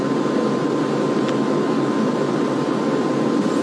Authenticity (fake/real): real